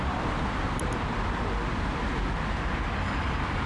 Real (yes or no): yes